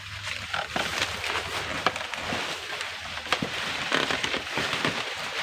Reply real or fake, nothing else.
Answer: real